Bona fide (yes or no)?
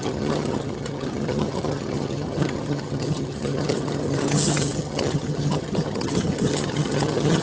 no